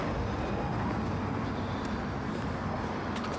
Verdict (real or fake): real